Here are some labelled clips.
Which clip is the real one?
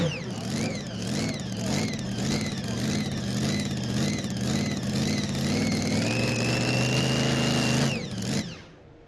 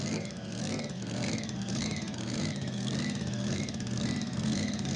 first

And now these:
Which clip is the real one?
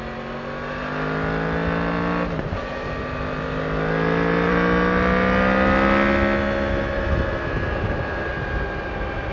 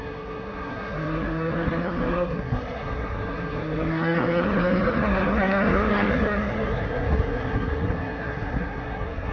first